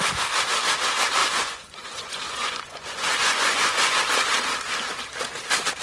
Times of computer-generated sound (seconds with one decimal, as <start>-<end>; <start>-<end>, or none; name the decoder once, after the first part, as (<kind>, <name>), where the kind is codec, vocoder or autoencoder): 1.2-4.0 (vocoder, Vocos)

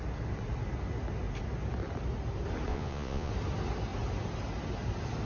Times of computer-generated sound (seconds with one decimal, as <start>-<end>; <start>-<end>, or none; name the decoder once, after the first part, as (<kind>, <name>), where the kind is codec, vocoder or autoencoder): 2.7-3.3 (vocoder, Vocos)

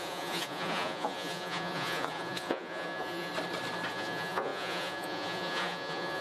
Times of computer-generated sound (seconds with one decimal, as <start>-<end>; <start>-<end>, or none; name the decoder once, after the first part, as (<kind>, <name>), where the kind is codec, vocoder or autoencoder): 0.0-3.3 (vocoder, Vocos); 3.9-6.2

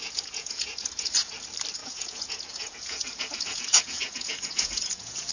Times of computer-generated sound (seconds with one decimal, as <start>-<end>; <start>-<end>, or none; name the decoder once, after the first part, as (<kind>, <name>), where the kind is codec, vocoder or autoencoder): 0.0-1.3 (vocoder, Vocos); 1.8-5.3

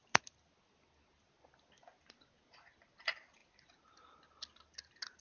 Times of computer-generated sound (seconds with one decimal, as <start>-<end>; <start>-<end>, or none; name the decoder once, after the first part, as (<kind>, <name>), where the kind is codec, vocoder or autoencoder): none

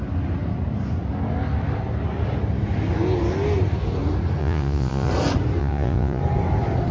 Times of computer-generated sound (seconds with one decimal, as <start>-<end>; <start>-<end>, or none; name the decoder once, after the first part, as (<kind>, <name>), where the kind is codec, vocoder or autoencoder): 4.4-5.1 (vocoder, Vocos); 5.6-6.2

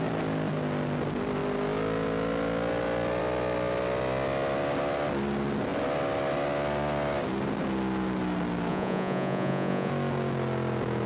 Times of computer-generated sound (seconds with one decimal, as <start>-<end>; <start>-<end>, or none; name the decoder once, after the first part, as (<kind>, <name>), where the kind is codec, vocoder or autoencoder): 8.7-9.9 (vocoder, Vocos)

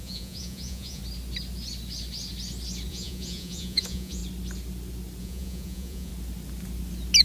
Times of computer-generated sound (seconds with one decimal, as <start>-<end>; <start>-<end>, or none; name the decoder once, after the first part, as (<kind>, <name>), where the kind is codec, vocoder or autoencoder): 0.0-1.0 (vocoder, Vocos); 2.9-4.2; 5.2-6.1